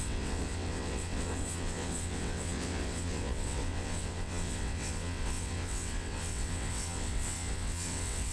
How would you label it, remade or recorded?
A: remade